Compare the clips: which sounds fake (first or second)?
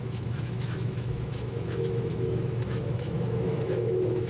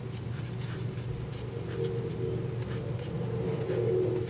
first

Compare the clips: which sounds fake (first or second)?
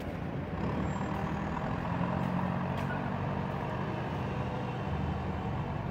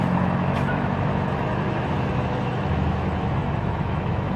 second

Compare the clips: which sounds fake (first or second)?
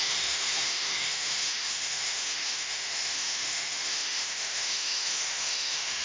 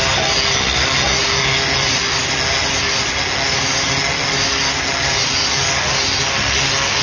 first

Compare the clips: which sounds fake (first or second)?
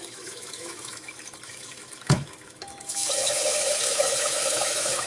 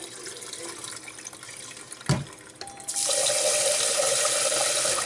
first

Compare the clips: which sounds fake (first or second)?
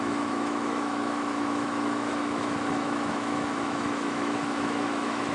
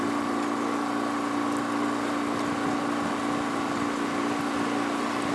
first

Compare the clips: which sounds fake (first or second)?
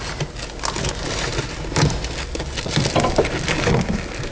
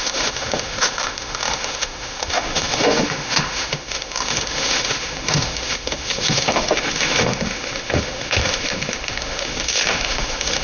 second